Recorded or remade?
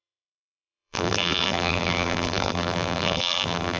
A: remade